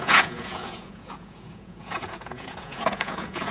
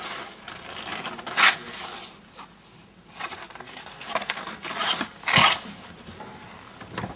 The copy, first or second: first